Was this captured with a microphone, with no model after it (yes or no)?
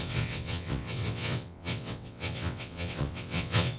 no